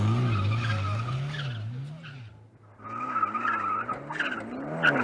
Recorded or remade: recorded